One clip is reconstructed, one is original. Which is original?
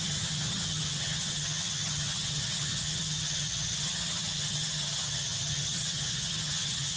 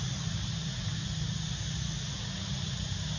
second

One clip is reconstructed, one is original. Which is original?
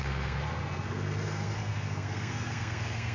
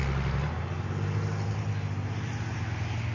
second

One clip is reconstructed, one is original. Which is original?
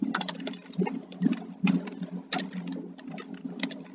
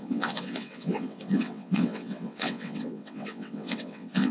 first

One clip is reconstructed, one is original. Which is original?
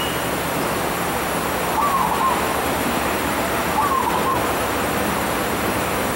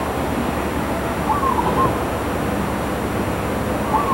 second